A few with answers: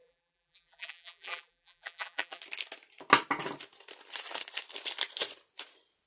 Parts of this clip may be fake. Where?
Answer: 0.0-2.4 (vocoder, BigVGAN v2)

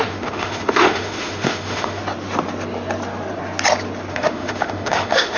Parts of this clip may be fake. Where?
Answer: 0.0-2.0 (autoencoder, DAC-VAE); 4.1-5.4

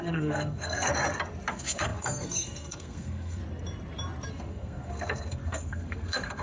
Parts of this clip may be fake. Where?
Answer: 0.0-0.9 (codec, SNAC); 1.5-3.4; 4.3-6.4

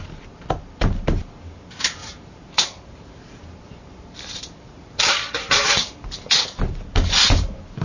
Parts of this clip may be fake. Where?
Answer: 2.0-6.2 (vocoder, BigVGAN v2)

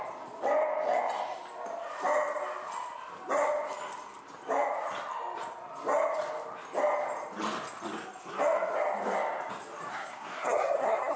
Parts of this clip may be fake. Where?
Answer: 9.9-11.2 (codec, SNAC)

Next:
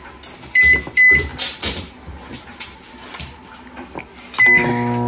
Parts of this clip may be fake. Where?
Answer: none

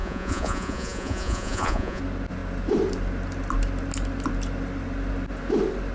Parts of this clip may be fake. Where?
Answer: 0.0-2.0 (vocoder, Vocos)